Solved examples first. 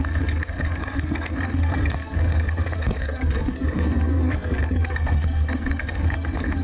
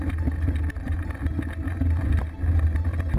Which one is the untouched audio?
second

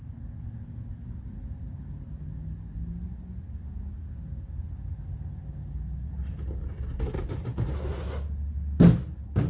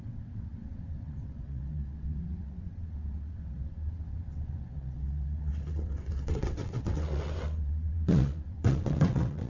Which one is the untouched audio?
first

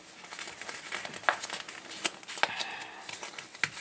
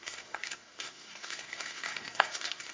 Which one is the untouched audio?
first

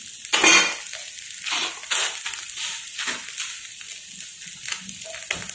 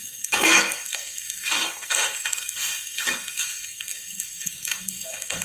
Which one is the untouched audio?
first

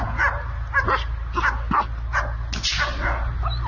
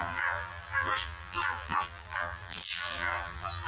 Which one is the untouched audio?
first